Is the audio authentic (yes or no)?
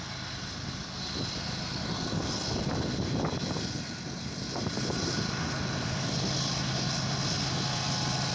yes